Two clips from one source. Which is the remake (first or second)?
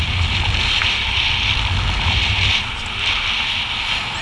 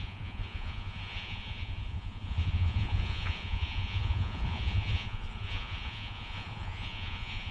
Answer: second